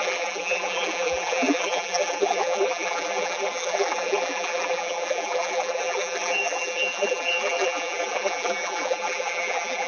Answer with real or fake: fake